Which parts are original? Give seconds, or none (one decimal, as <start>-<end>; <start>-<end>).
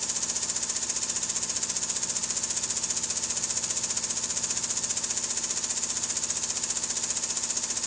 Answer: 0.0-7.9